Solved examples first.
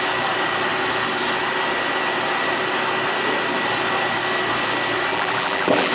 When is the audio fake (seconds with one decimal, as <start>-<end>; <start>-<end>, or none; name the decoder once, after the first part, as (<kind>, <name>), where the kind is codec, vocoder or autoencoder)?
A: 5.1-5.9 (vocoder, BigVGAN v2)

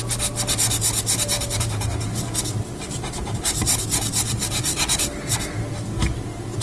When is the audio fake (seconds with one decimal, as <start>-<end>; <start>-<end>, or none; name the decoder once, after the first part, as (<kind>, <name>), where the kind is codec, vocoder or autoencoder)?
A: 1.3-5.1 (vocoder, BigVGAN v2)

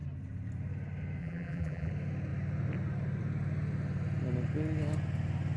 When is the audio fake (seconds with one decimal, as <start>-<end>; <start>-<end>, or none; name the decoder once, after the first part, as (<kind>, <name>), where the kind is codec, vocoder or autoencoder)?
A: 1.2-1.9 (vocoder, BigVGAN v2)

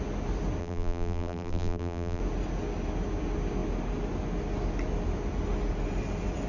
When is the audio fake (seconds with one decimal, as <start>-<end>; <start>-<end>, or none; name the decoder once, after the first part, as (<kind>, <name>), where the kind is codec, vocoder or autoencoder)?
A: 0.6-2.2 (vocoder, BigVGAN v2)

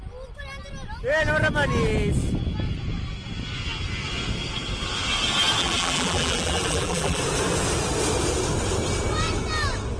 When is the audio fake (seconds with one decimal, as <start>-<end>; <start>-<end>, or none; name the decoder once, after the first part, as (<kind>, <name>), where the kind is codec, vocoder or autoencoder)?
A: 5.6-7.2 (vocoder, BigVGAN v2)

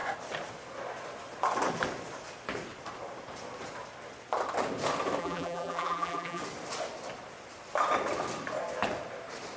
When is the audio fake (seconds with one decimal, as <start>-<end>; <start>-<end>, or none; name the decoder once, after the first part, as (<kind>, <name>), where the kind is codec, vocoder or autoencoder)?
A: 5.2-6.4 (vocoder, BigVGAN v2)

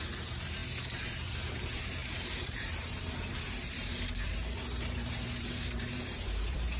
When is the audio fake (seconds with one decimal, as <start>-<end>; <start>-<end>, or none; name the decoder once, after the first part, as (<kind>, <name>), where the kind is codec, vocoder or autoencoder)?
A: 0.0-6.8 (vocoder, BigVGAN v2)

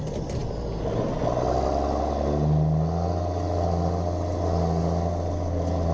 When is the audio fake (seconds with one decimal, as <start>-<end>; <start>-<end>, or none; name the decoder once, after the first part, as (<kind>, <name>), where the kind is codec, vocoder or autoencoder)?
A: 0.4-1.1 (vocoder, BigVGAN v2)